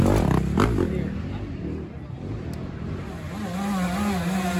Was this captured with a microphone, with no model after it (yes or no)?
yes